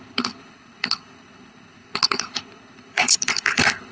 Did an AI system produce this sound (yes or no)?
yes